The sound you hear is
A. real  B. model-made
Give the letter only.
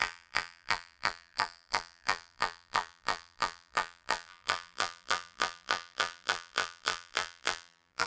B